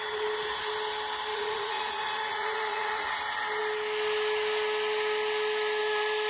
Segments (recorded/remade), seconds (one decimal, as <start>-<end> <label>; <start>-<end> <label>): 0.0-1.3 recorded; 1.3-3.2 remade; 3.2-6.3 recorded